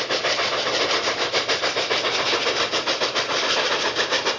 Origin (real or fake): real